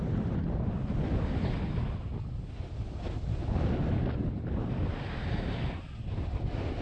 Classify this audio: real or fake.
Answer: real